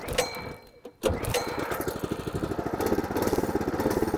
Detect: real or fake real